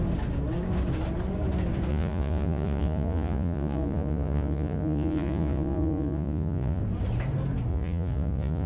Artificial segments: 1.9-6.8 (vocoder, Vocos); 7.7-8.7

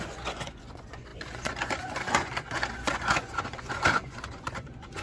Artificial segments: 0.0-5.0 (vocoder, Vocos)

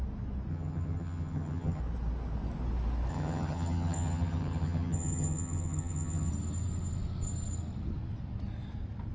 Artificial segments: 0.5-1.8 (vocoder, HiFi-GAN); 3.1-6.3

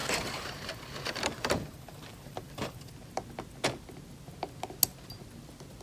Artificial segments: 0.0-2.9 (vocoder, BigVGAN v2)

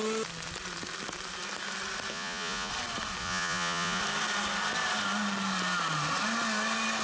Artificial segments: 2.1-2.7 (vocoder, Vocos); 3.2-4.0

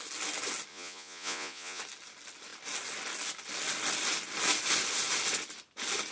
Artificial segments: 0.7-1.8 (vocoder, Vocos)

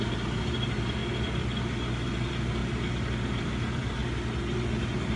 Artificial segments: 0.0-1.0 (vocoder, BigVGAN v2); 2.1-2.6; 3.4-4.0; 4.7-5.2

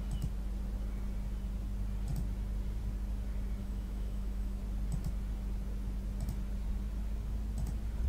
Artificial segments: 3.6-4.6 (autoencoder, DAC-VAE)